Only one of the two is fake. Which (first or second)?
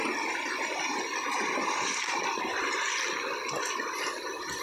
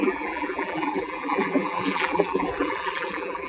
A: second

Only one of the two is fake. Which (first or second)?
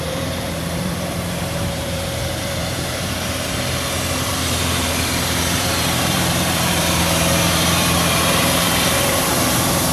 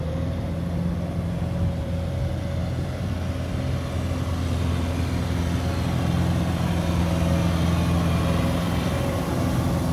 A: first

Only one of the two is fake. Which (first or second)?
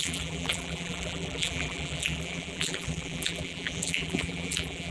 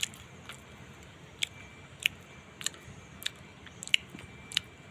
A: first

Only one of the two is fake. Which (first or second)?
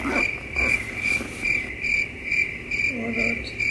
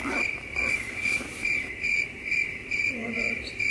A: second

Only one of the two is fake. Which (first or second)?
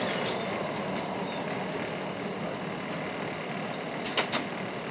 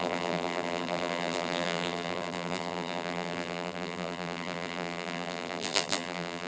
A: second